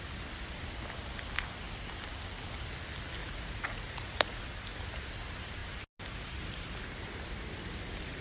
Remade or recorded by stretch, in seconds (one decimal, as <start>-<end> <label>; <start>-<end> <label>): 0.0-3.2 recorded; 3.2-4.4 remade; 4.4-8.2 recorded